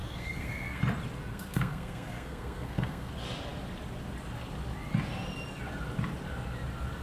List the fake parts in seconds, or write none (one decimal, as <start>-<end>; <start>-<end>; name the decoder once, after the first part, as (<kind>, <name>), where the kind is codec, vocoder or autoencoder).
0.0-0.8 (codec, SNAC); 1.3-3.1